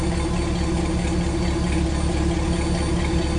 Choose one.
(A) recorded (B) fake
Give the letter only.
A